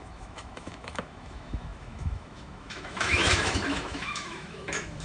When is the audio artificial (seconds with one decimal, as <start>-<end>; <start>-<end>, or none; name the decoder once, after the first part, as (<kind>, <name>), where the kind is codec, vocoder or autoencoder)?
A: 0.0-5.0 (autoencoder, DAC-VAE)